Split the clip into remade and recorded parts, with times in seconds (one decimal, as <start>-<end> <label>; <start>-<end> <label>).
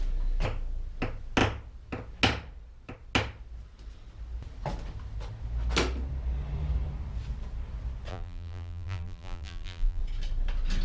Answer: 0.0-8.1 recorded; 8.1-10.0 remade; 10.0-10.8 recorded